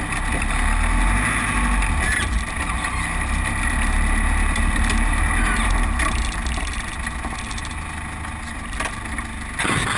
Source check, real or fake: real